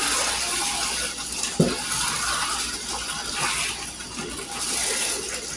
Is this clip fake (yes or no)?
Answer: no